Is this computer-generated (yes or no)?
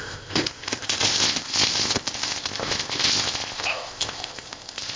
yes